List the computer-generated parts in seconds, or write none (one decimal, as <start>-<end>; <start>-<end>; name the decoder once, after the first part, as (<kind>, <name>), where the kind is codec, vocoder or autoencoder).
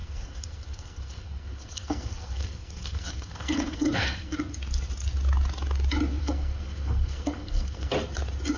0.0-4.5 (codec, SNAC); 6.2-7.9